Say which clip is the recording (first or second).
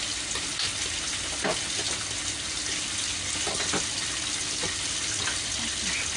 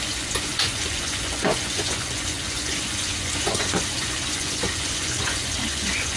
first